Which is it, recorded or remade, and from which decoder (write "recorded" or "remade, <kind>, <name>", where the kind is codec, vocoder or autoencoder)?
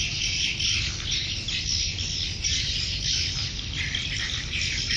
recorded